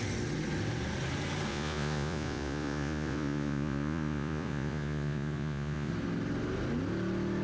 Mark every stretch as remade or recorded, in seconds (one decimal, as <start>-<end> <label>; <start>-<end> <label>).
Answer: 0.0-1.5 recorded; 1.5-5.9 remade; 5.9-7.4 recorded